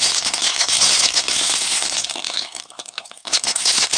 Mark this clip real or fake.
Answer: fake